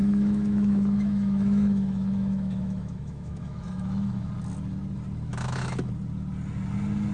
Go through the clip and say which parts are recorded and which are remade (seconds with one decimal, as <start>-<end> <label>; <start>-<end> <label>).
0.0-4.3 remade; 4.3-5.3 recorded; 5.3-5.9 remade; 5.9-7.1 recorded